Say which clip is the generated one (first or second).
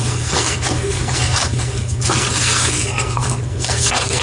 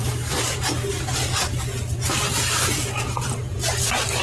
first